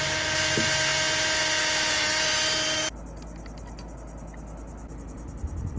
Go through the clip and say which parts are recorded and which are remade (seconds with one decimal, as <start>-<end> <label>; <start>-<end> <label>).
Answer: 0.0-5.8 recorded